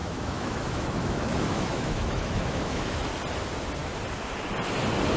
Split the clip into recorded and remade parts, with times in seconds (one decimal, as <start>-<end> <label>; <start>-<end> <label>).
0.0-3.1 remade; 3.1-5.2 recorded